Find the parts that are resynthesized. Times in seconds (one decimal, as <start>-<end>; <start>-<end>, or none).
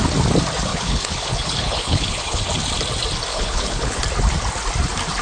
0.7-2.4; 3.3-4.0